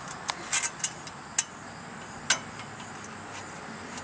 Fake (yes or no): no